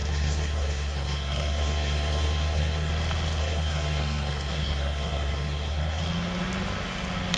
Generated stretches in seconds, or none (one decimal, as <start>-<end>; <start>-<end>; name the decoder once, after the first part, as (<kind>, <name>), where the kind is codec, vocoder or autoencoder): 0.0-2.9 (codec, SNAC); 3.4-6.0